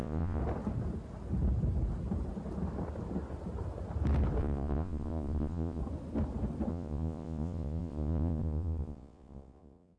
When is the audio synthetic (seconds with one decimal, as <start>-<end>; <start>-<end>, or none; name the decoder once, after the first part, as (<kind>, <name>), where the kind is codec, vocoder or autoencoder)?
0.0-0.4 (vocoder, Vocos); 4.4-5.8; 6.7-10.0